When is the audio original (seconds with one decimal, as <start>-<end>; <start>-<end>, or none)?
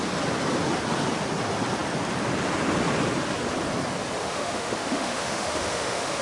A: 0.0-4.2